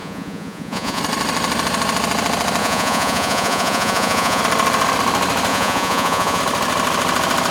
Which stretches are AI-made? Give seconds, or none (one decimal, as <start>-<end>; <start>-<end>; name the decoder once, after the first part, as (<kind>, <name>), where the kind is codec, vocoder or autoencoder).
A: 0.0-1.0 (vocoder, Vocos); 2.6-4.4; 5.5-6.4